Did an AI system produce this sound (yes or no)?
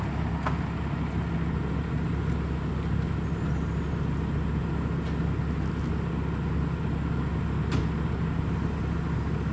no